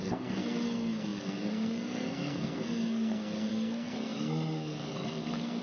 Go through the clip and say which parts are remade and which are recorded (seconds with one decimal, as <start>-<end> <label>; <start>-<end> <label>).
0.0-5.6 remade